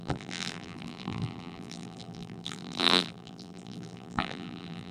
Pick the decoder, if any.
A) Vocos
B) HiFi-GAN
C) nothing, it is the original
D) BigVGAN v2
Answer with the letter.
D